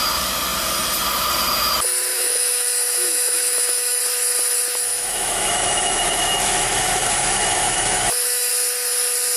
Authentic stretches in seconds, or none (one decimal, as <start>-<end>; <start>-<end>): 0.0-2.1; 4.0-4.9; 8.5-9.4